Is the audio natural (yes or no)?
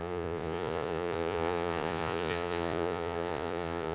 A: no